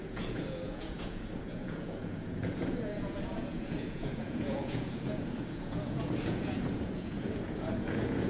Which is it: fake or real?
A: fake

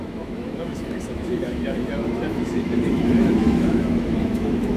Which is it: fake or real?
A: fake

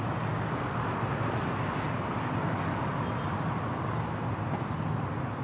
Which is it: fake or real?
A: real